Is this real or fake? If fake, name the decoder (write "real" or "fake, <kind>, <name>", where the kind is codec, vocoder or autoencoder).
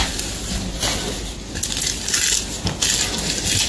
real